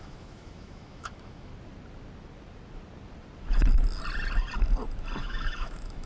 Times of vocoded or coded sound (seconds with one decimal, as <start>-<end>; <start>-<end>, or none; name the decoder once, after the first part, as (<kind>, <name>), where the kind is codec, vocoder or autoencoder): 0.0-1.5 (autoencoder, DAC-VAE); 5.2-6.1